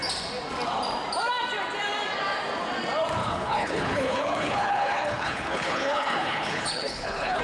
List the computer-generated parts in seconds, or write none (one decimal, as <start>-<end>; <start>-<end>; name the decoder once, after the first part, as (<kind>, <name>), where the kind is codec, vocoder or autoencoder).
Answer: 3.2-7.4 (codec, HILCodec)